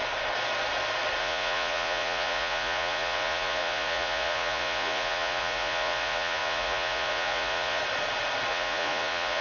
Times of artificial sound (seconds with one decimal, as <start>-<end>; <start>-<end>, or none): 1.2-7.8; 8.5-9.4